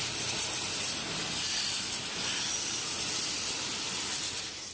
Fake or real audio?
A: fake